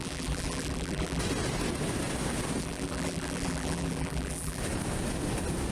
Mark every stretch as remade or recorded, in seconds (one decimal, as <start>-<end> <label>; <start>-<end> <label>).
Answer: 0.0-1.2 remade; 1.2-2.6 recorded; 2.6-4.6 remade; 4.6-5.7 recorded